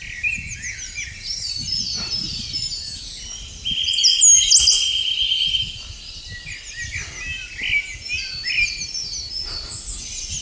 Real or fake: real